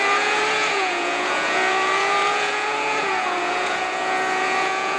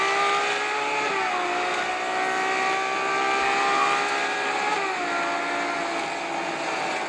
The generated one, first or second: first